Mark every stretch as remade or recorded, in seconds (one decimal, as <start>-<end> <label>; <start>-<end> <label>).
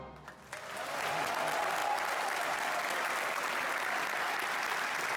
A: 0.0-5.2 recorded